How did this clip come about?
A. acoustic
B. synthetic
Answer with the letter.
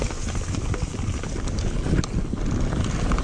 A